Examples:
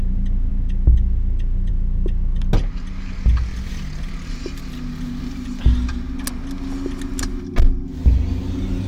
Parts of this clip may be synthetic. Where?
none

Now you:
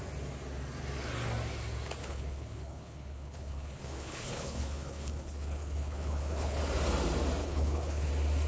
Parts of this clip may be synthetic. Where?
2.0-6.6 (codec, HILCodec); 7.4-8.1

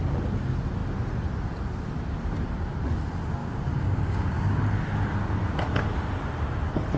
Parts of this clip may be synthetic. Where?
3.4-4.6 (codec, DAC)